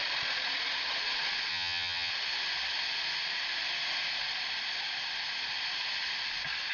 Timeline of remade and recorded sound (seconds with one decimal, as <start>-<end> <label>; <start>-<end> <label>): 0.0-1.5 recorded; 1.5-2.1 remade; 2.1-6.7 recorded